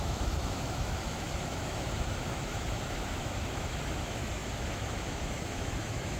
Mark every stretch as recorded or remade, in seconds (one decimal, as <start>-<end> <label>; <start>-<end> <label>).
0.0-6.2 remade